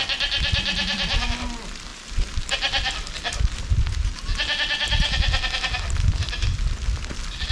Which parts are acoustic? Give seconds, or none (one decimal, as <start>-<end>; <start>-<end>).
0.0-7.5